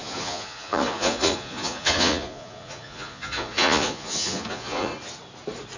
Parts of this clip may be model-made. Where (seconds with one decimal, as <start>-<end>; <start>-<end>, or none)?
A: 0.0-4.9